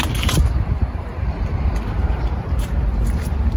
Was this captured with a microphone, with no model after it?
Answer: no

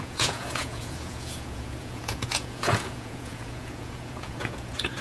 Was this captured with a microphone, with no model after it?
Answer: no